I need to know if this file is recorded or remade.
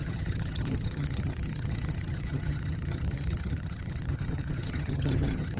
remade